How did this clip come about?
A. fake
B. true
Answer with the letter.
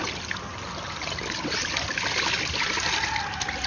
B